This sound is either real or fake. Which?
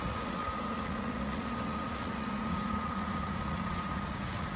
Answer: fake